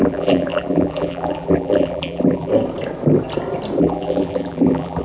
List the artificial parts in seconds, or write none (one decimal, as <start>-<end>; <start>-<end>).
0.0-2.5; 3.8-5.0